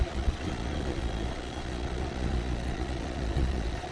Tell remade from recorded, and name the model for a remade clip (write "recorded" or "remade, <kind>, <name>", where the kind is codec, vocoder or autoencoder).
remade, vocoder, Vocos